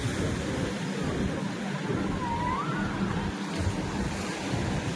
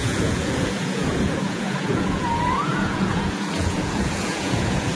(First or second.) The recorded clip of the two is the first